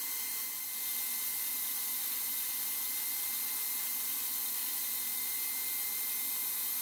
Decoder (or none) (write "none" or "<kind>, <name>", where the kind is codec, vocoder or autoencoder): none